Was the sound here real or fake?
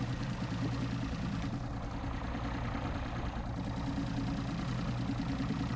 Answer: real